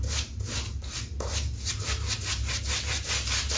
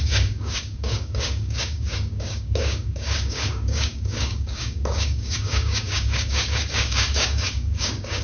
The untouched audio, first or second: first